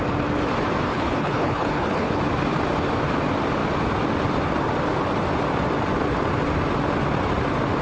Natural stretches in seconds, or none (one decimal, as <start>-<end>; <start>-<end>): 0.0-0.9; 2.2-7.8

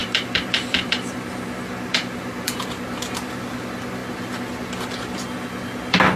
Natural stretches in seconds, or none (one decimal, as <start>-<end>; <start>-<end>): 4.0-5.0